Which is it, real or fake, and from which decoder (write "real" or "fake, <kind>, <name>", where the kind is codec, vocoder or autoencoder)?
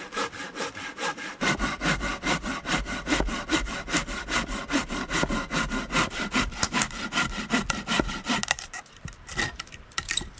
fake, vocoder, BigVGAN v2